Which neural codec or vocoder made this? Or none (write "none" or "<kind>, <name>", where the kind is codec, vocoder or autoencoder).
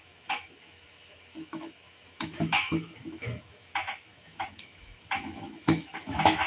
autoencoder, DAC-VAE